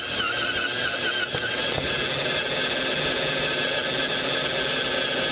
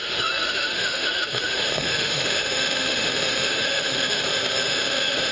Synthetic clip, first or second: second